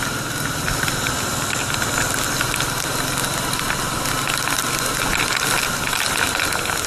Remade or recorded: recorded